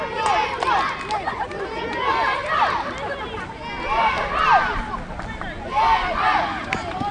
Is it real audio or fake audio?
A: real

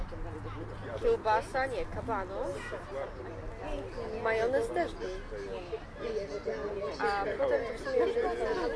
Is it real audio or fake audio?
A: real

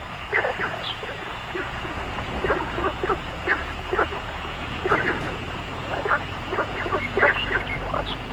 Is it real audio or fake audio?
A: fake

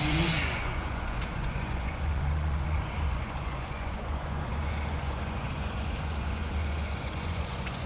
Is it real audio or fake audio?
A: fake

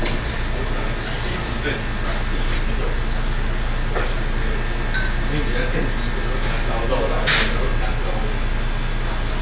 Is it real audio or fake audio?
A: real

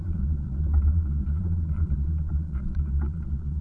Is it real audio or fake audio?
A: fake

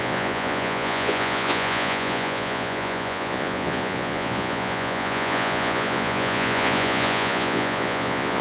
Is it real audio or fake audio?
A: fake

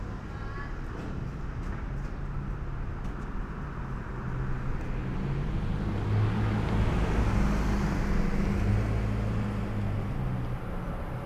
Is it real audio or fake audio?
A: real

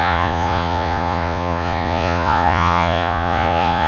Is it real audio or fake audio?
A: fake